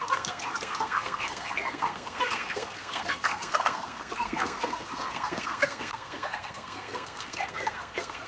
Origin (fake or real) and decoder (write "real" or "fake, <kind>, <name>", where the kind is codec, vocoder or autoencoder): fake, codec, SNAC